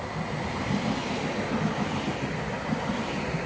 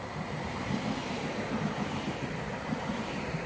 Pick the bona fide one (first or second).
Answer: first